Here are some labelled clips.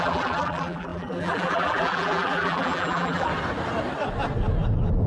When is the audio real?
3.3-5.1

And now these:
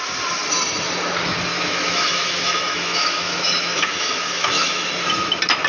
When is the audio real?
0.0-1.5; 4.9-5.7

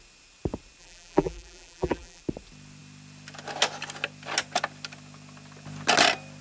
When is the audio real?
0.0-0.8; 2.2-6.4

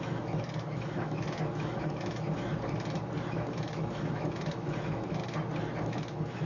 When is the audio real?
2.5-3.3; 5.2-5.9

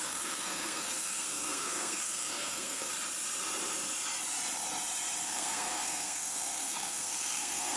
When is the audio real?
2.9-5.2

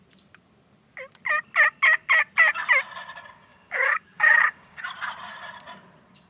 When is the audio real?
0.0-3.5; 4.8-6.3